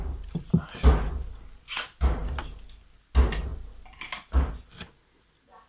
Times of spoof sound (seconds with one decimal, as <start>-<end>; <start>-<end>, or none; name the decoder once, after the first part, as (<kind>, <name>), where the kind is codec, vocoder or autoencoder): none